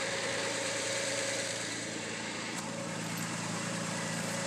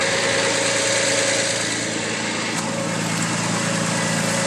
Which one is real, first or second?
second